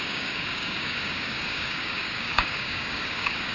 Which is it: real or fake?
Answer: fake